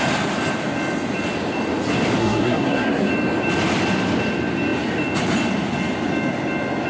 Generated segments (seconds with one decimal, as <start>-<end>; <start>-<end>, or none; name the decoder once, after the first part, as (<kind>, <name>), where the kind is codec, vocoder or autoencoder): 2.2-3.1 (codec, SNAC)